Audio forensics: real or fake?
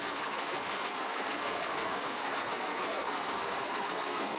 fake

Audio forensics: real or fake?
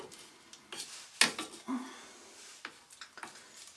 real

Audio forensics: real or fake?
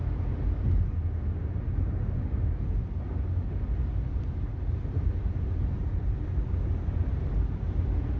real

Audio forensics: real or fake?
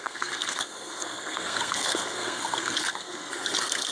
fake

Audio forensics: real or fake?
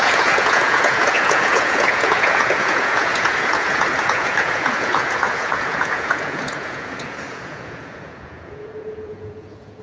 fake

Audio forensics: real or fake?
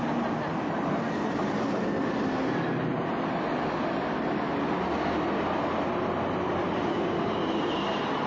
real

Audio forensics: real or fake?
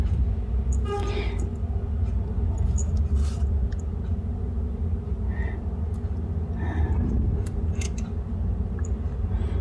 real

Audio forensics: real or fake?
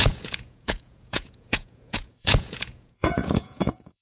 fake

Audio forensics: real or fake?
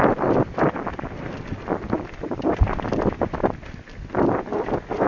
real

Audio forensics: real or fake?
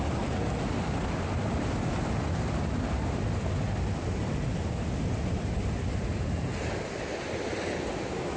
real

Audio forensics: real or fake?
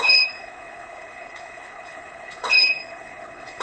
fake